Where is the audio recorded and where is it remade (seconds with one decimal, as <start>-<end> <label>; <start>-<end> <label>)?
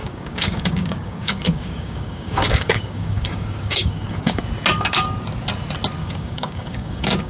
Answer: 0.0-4.4 remade; 4.4-6.0 recorded; 6.0-7.3 remade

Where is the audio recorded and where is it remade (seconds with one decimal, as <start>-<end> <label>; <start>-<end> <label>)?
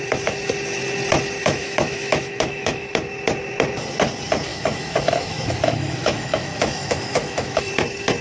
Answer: 0.0-1.4 recorded; 1.4-2.9 remade; 2.9-4.5 recorded; 4.5-7.7 remade; 7.7-8.2 recorded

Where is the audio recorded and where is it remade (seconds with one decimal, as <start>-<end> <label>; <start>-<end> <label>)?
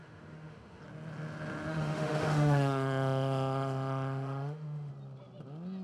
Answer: 0.0-0.8 remade; 0.8-1.7 recorded; 1.7-4.9 remade; 4.9-5.8 recorded